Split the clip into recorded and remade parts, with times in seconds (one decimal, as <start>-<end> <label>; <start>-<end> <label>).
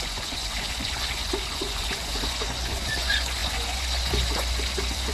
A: 0.0-5.1 remade